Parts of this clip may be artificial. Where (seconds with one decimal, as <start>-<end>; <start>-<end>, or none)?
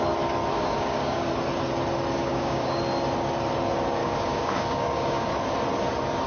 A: 0.5-1.3; 2.2-2.8; 4.0-5.3